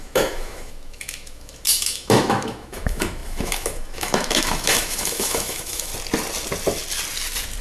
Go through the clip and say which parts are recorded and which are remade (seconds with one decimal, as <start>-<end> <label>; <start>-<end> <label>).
0.0-5.9 remade; 5.9-7.6 recorded